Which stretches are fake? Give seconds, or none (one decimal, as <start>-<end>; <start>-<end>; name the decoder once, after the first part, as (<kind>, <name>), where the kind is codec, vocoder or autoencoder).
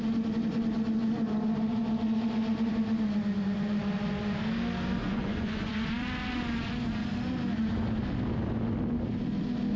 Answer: 5.0-5.9 (vocoder, Vocos)